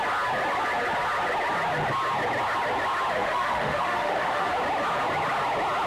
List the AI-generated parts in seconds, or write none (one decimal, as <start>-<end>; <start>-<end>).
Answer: 3.1-4.5